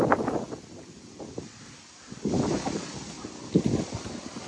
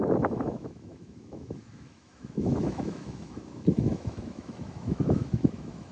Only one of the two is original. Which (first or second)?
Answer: first